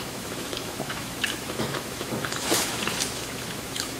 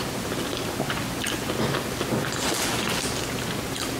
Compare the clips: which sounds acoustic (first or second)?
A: second